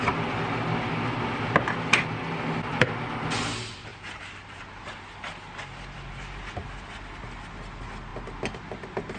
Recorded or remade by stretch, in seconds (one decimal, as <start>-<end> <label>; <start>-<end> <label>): 0.0-9.2 recorded